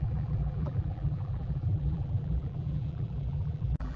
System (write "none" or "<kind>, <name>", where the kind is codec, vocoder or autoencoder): vocoder, BigVGAN v2